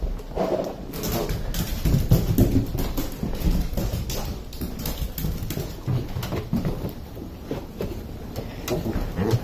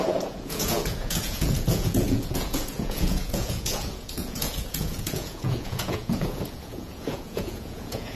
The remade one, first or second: second